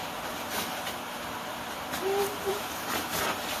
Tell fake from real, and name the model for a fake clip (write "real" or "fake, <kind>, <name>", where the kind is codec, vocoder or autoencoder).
fake, vocoder, BigVGAN v2